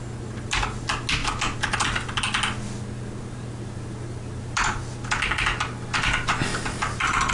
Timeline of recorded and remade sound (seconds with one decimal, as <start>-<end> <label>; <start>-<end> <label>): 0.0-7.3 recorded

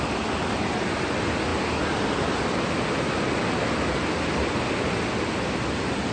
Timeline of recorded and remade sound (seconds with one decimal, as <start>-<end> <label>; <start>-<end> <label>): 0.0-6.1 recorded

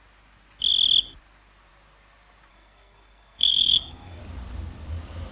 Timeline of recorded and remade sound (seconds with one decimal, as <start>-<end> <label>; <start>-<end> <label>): 0.0-2.5 recorded; 2.5-4.2 remade; 4.2-5.3 recorded

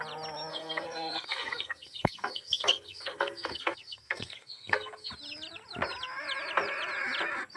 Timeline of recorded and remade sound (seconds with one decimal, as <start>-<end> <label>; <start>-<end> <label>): 0.0-0.5 recorded; 0.5-5.1 remade; 5.1-7.6 recorded

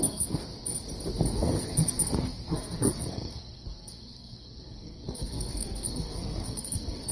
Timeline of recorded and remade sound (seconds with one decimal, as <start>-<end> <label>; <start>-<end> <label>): 0.0-0.4 remade; 0.4-1.3 recorded; 1.3-7.1 remade

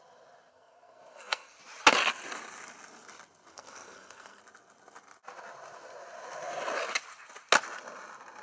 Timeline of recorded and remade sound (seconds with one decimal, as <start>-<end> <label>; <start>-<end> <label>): 0.0-0.5 recorded; 0.5-1.6 remade; 1.6-3.5 recorded; 3.5-4.4 remade; 4.4-8.4 recorded

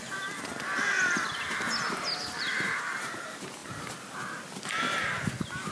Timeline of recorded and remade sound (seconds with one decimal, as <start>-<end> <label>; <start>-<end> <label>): 0.0-5.7 recorded

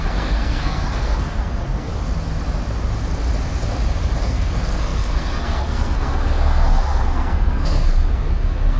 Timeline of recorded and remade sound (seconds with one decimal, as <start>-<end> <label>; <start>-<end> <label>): 0.0-1.9 remade; 1.9-4.2 recorded; 4.2-8.8 remade